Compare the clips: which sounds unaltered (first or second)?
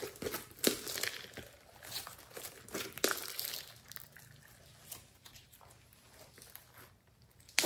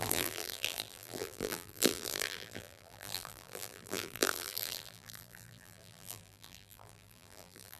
first